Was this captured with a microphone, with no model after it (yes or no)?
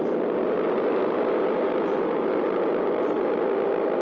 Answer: yes